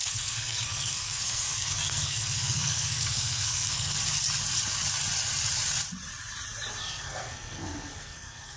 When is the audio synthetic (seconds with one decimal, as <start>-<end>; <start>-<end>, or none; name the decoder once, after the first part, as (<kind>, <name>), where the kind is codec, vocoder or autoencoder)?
0.0-4.0 (codec, SNAC); 6.8-8.6